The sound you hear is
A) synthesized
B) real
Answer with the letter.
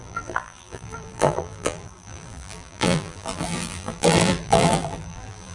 A